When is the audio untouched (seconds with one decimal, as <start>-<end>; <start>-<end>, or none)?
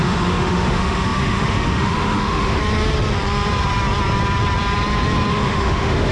2.6-5.3